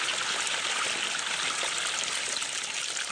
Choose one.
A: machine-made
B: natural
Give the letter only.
B